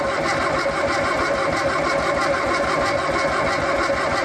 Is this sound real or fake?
real